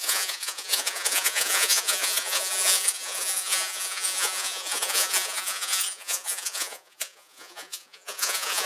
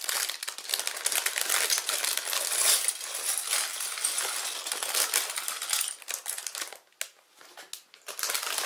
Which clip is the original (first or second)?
second